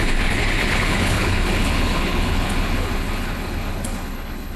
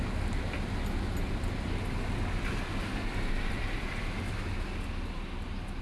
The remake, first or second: first